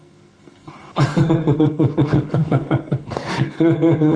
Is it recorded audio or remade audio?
remade